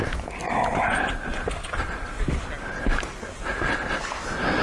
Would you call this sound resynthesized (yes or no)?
no